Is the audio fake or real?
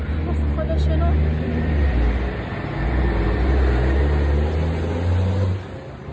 real